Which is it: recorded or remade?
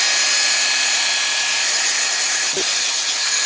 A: recorded